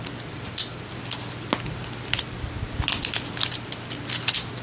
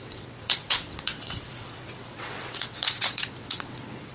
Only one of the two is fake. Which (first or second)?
second